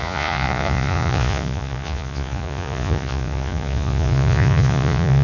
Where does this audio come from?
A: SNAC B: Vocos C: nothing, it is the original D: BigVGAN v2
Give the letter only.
B